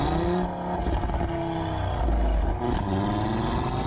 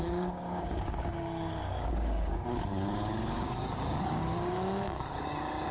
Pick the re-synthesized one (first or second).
second